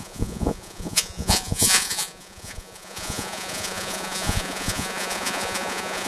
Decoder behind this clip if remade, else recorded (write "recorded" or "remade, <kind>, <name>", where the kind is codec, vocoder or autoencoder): remade, vocoder, Vocos